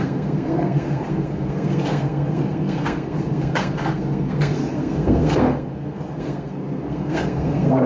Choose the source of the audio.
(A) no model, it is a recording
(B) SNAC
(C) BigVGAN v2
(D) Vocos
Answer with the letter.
B